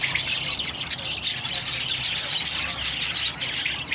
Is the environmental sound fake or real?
real